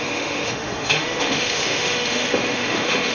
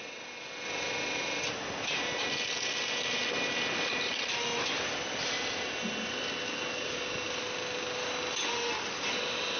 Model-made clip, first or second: first